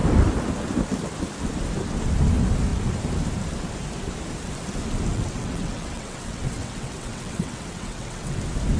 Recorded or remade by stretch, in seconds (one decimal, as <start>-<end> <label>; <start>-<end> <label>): 0.0-5.1 recorded; 5.1-8.4 remade; 8.4-8.8 recorded